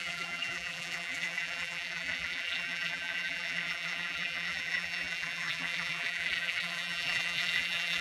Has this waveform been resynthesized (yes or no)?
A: yes